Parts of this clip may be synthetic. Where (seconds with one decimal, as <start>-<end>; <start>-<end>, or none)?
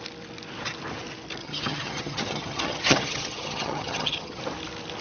1.4-4.4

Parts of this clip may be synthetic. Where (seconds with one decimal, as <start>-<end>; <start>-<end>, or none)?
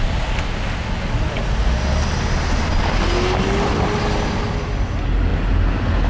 none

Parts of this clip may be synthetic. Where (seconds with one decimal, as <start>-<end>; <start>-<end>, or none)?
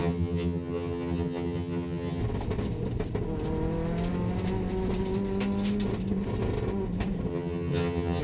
0.0-2.2; 7.3-8.2